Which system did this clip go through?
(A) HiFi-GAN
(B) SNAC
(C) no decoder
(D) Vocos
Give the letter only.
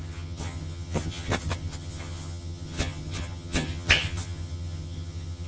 A